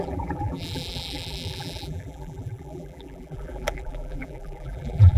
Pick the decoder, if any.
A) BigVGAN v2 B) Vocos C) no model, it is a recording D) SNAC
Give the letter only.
A